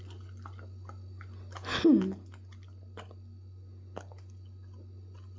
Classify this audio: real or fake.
real